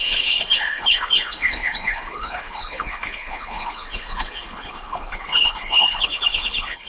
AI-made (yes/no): yes